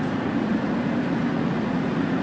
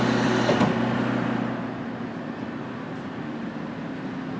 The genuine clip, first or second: second